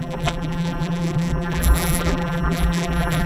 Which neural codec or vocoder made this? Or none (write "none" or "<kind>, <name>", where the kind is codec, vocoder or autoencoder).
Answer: vocoder, BigVGAN v2